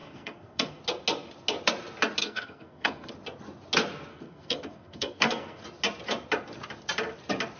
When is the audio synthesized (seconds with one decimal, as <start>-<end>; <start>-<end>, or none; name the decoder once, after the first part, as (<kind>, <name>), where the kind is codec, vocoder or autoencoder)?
0.0-0.8 (codec, SNAC); 2.2-3.1; 4.1-5.6